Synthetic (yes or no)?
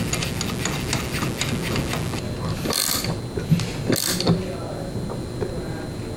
no